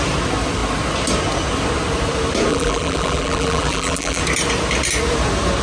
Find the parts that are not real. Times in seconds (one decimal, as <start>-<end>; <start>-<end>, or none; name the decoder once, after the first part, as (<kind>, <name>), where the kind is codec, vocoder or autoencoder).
2.5-4.2 (vocoder, BigVGAN v2)